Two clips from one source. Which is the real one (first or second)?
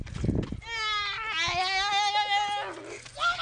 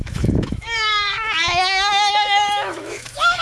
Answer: first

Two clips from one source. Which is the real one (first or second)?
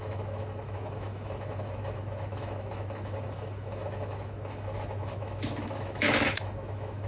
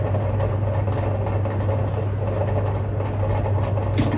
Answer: second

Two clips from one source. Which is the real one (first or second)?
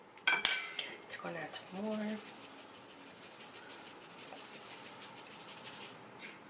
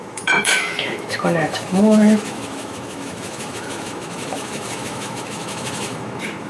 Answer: first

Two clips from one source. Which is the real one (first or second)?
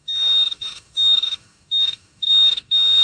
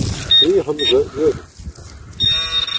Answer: second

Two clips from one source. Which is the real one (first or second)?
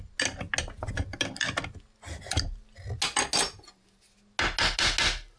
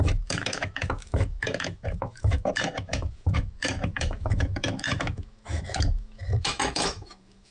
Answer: first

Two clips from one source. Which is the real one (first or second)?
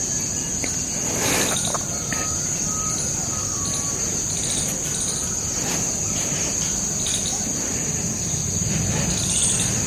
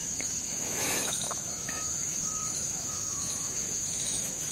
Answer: first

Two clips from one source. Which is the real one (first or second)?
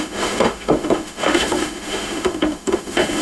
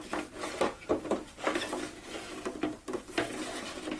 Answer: second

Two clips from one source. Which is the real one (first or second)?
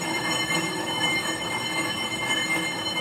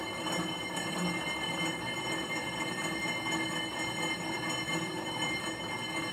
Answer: second